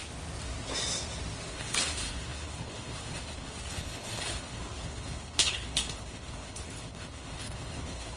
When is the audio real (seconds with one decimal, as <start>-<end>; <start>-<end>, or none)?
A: 0.0-1.5